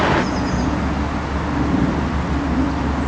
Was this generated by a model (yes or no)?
no